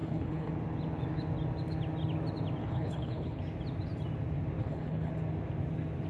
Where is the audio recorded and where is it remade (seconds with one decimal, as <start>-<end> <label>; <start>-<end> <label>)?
0.0-0.5 remade; 0.5-2.6 recorded; 2.6-3.4 remade; 3.4-4.6 recorded; 4.6-5.1 remade; 5.1-6.1 recorded